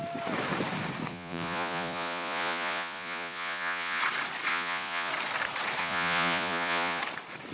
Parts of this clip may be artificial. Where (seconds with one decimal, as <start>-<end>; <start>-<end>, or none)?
1.1-4.0; 4.5-5.1; 5.8-7.0